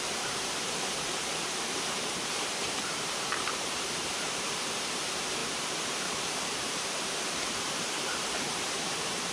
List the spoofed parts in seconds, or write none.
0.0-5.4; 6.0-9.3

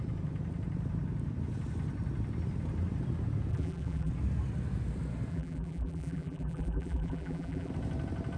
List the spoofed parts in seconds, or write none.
3.5-4.1; 5.3-7.7

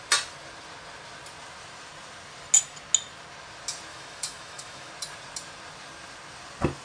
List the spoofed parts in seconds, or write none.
3.9-4.9

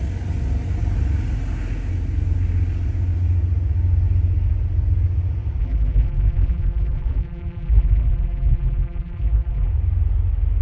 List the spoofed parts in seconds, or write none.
5.6-9.7

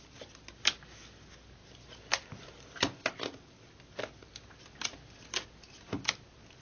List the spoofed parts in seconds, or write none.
none